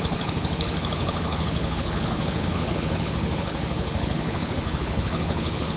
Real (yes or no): no